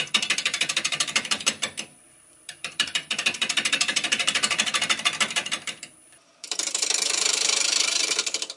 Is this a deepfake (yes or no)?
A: yes